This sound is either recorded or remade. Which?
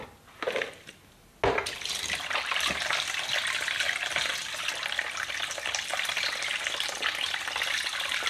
recorded